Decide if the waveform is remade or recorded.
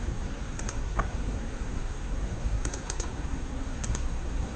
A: remade